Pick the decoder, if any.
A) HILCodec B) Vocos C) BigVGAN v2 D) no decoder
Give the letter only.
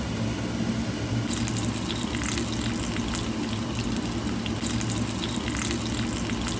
D